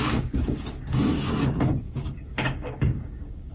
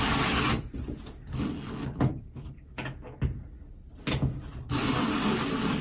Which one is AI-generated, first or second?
first